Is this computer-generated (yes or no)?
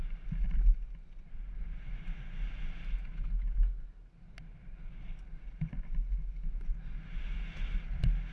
no